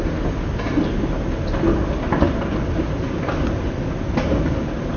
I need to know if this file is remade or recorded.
recorded